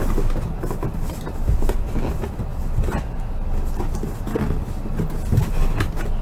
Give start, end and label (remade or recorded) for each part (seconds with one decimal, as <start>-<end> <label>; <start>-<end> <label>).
0.0-6.2 recorded